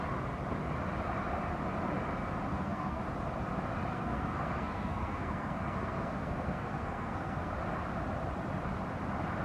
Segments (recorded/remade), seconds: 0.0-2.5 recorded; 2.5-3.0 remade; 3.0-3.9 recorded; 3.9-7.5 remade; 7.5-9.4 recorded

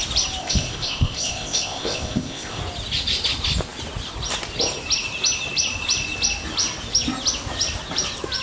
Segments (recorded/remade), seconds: 0.0-0.4 recorded; 0.4-2.6 remade; 2.6-8.4 recorded

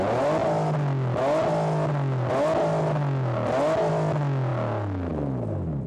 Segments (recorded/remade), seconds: 0.0-5.9 recorded

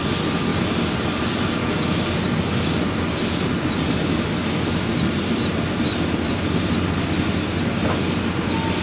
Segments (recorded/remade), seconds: 0.0-8.8 recorded